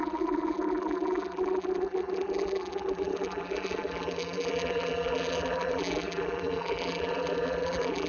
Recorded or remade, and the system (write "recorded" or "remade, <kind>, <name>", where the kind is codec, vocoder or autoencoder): remade, vocoder, BigVGAN v2